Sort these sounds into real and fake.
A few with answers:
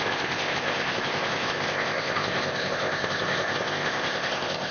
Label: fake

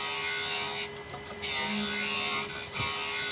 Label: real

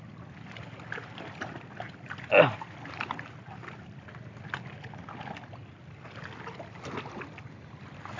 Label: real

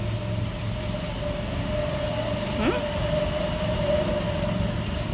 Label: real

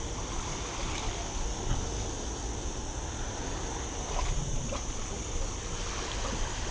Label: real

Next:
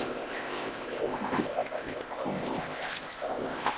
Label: fake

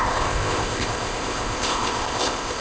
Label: fake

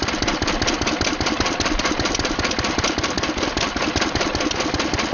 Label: real